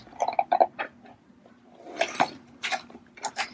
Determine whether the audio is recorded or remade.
recorded